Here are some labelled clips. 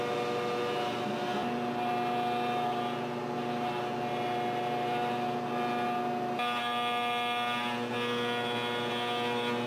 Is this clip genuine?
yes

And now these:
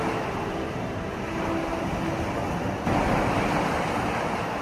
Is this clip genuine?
yes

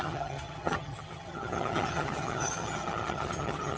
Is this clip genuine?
no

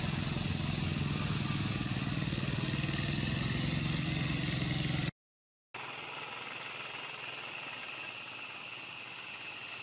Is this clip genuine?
yes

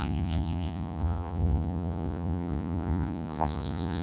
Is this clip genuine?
no